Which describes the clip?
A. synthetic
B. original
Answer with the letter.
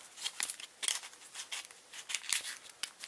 B